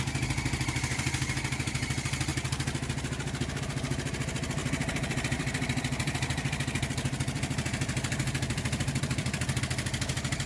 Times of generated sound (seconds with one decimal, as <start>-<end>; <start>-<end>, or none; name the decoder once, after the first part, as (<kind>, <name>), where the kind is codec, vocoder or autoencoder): 4.6-9.6 (vocoder, BigVGAN v2)